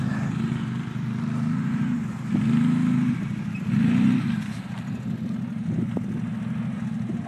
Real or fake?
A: real